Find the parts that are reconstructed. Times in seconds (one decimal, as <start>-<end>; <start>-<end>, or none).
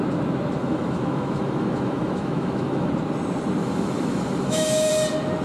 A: 0.6-2.9; 3.6-4.9